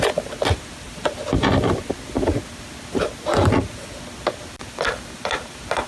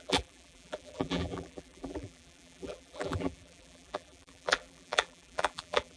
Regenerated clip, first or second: second